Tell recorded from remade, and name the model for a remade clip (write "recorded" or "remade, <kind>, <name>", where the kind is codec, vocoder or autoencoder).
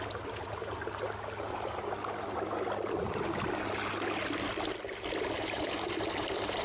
recorded